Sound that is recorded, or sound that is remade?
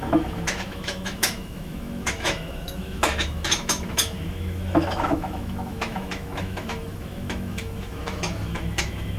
remade